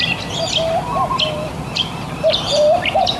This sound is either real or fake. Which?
fake